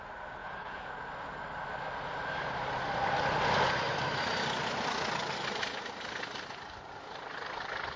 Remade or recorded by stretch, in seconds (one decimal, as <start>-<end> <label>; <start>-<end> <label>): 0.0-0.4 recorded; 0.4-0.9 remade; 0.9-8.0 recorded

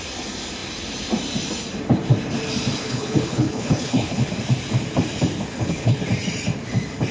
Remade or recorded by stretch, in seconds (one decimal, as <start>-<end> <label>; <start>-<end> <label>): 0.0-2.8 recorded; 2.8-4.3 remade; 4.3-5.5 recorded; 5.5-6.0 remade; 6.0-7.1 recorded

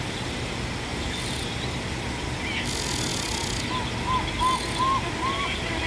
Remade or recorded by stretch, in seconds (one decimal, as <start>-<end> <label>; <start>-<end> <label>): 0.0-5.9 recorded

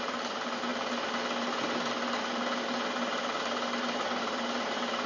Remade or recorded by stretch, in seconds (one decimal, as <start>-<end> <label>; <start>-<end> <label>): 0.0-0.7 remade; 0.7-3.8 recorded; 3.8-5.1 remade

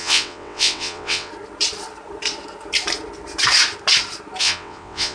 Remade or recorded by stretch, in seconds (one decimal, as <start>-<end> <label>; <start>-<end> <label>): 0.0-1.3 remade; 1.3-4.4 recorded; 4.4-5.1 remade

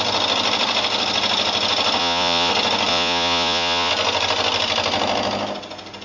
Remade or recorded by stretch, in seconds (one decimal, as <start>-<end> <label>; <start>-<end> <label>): 0.0-2.0 recorded; 2.0-2.5 remade; 2.5-2.9 recorded; 2.9-3.9 remade; 3.9-6.0 recorded

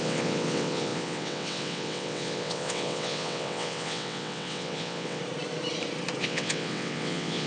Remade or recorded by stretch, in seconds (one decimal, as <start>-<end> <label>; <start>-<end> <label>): 0.0-5.2 remade; 5.2-6.2 recorded; 6.2-7.5 remade